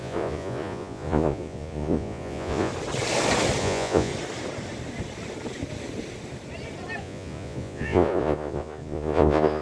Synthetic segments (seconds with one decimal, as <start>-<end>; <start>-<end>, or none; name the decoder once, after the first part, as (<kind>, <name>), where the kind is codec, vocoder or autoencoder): 0.0-2.7 (vocoder, Vocos); 3.6-4.1; 7.0-9.6